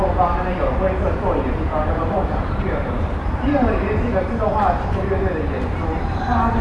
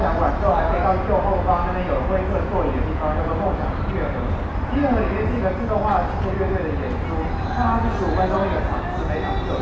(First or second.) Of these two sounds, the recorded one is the second